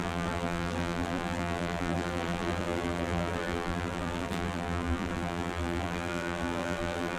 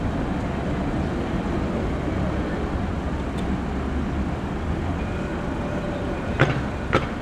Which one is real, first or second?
second